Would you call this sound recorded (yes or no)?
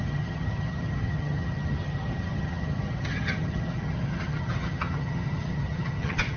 no